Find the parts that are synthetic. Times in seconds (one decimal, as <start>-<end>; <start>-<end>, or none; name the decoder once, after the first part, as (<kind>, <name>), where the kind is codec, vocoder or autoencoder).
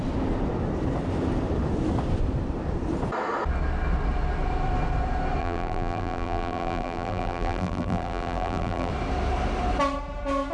5.4-8.9 (vocoder, BigVGAN v2)